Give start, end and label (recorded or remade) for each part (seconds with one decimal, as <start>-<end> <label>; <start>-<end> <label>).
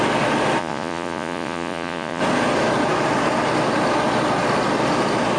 0.0-0.6 recorded; 0.6-2.2 remade; 2.2-5.4 recorded